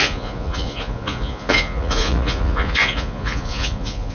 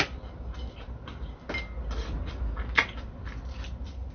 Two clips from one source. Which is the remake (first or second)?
first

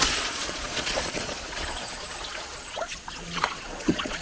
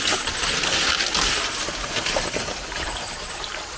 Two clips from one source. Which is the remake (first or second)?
first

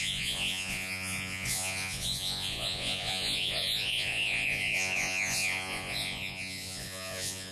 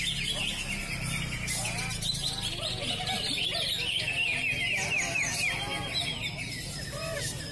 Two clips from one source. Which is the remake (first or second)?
first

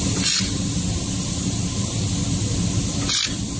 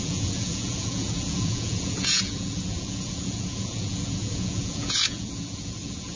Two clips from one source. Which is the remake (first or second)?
second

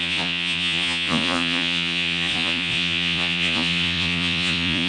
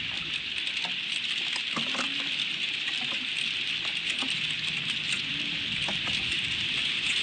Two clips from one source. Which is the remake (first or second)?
first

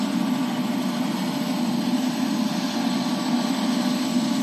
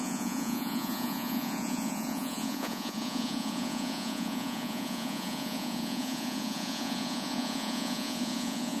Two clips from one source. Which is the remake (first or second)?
second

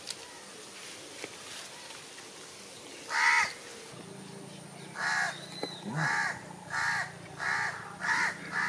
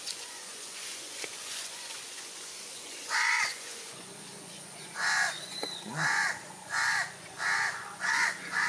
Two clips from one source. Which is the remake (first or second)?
second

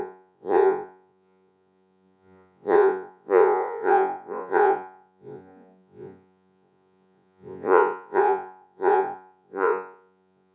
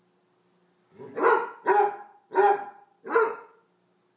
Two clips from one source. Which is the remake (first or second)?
first